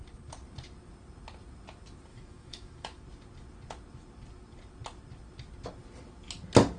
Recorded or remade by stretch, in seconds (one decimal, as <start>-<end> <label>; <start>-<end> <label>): 0.0-2.1 recorded; 2.1-3.0 remade; 3.0-6.8 recorded